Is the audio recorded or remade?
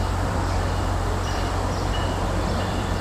remade